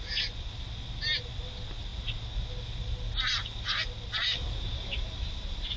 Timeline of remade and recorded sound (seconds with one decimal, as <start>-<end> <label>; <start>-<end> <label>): 0.0-5.8 recorded